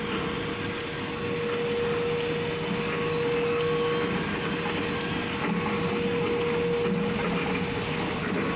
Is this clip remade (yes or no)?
no